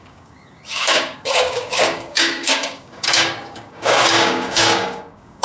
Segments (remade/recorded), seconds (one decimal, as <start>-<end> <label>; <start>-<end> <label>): 0.0-5.4 remade